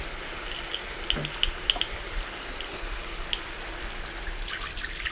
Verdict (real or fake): real